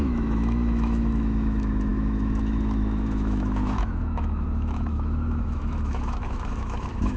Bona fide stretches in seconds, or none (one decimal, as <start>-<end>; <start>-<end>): none

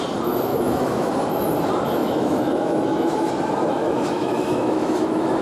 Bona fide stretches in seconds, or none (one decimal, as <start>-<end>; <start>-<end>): 0.0-0.5; 1.1-2.0; 3.3-3.7

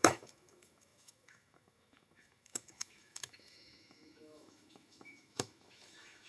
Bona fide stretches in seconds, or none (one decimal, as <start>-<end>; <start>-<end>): none

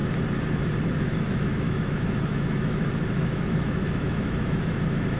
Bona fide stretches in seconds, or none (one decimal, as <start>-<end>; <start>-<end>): 0.0-0.8